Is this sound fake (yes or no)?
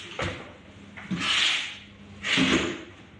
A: no